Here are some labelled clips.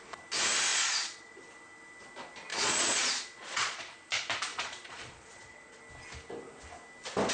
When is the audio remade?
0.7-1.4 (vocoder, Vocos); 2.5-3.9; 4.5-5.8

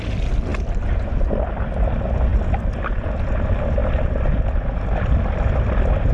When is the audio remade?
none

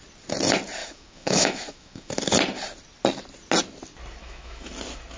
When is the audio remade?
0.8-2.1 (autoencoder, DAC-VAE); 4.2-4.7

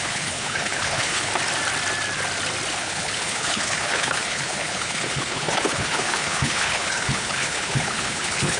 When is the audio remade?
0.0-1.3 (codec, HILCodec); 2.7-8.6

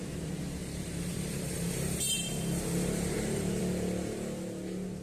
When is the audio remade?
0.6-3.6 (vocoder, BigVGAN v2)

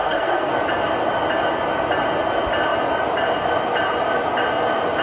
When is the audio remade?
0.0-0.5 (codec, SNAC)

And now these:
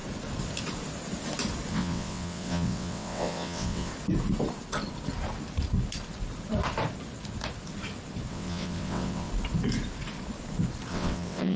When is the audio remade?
1.7-3.9 (vocoder, WaveNeXt); 8.3-9.3; 10.9-11.6